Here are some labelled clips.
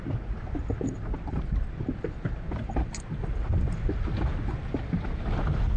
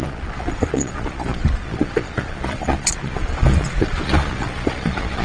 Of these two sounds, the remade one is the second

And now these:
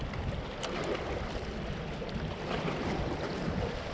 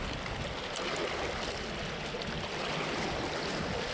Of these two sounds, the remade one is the first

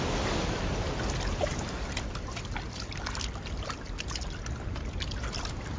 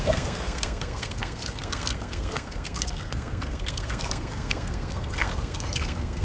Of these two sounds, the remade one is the second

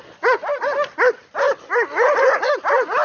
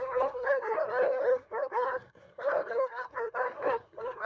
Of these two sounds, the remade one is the second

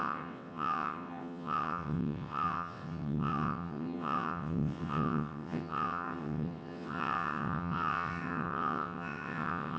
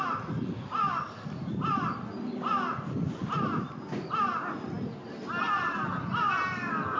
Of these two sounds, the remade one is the first